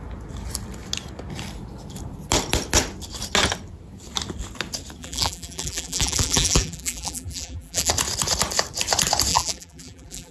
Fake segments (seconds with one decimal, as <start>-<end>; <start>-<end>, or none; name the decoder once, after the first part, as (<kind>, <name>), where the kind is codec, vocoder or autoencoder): 5.0-7.9 (vocoder, BigVGAN v2); 9.3-10.3